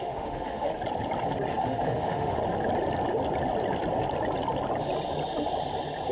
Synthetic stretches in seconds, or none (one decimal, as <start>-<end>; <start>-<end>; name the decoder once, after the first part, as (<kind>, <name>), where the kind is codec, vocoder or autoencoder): 0.0-0.7 (autoencoder, DAC-VAE); 1.5-2.4

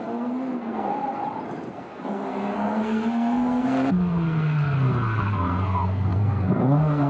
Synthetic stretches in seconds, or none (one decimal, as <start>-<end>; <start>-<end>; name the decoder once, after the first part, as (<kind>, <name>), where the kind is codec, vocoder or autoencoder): 0.0-1.2 (codec, SNAC); 1.7-7.1

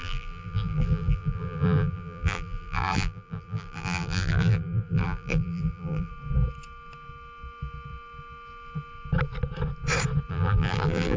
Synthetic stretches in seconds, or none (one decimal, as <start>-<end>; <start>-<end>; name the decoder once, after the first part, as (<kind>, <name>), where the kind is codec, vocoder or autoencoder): 0.0-6.1 (vocoder, BigVGAN v2); 10.3-11.2